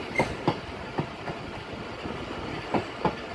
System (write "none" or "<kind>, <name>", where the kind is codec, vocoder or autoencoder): none